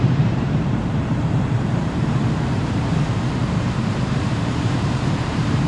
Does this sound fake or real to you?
fake